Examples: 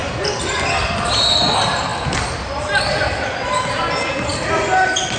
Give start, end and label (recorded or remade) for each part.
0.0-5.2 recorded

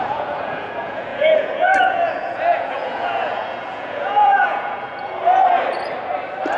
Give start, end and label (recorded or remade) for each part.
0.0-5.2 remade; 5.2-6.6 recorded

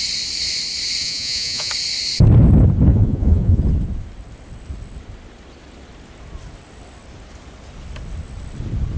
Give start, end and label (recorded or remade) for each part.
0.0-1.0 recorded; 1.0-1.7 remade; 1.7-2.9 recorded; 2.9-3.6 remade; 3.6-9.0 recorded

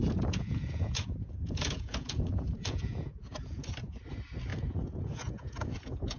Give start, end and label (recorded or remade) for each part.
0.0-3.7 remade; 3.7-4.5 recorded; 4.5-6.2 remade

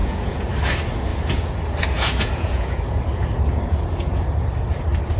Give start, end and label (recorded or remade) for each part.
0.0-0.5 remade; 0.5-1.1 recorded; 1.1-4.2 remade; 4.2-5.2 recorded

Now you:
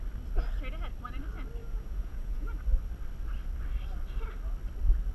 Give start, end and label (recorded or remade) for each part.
0.0-1.6 recorded; 1.6-2.6 remade; 2.6-5.1 recorded